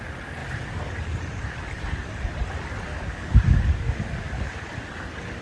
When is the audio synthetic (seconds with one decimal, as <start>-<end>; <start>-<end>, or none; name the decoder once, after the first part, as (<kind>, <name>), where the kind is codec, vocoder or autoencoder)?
2.9-4.6 (codec, DAC)